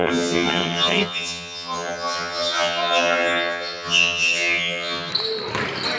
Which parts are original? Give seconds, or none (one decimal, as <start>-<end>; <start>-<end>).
5.1-6.0